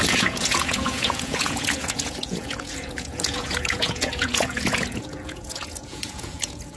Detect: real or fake fake